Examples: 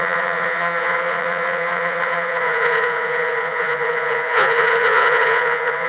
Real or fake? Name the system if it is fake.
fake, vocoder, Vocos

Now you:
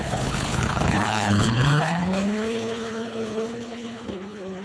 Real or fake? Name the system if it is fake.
fake, codec, HILCodec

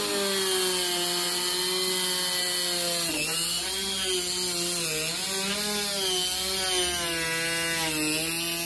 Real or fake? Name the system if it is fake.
real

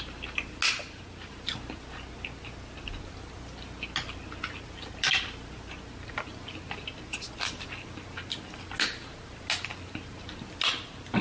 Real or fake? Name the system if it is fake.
real